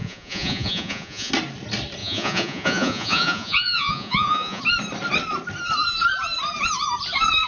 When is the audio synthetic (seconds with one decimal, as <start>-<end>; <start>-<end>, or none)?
0.0-1.3; 2.0-4.6